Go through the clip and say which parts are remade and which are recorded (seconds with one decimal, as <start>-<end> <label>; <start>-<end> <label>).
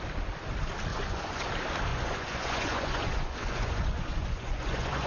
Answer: 0.0-0.9 recorded; 0.9-1.5 remade; 1.5-1.9 recorded; 1.9-5.1 remade